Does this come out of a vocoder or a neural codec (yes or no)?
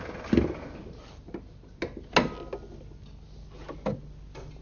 no